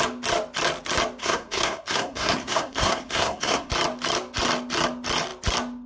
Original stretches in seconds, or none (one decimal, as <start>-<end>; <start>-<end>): 0.0-1.2; 3.7-5.9